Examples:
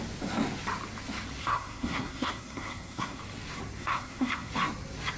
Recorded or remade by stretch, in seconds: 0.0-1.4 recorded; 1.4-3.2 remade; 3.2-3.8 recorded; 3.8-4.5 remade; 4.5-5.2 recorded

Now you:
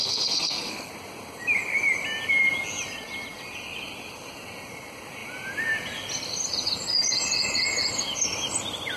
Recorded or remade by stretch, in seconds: 0.0-0.9 remade; 0.9-9.0 recorded

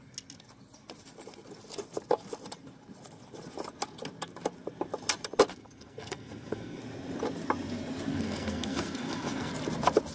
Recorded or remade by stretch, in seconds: 0.0-5.5 recorded; 5.5-6.8 remade; 6.8-8.1 recorded; 8.1-9.5 remade; 9.5-10.1 recorded

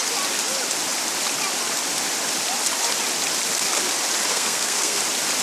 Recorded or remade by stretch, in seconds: 0.0-4.3 recorded; 4.3-5.0 remade; 5.0-5.4 recorded

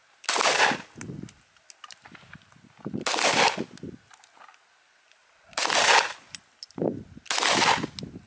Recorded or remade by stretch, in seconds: 0.0-8.3 recorded

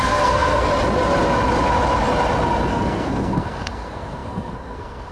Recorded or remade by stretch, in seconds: 0.0-0.7 remade; 0.7-2.7 recorded; 2.7-5.1 remade

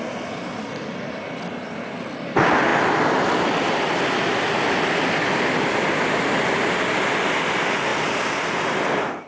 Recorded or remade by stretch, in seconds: 0.0-9.3 recorded

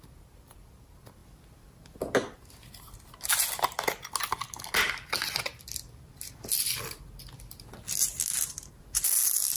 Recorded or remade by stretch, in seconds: 0.0-9.6 recorded